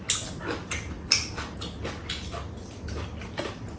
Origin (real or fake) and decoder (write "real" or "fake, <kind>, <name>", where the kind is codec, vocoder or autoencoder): real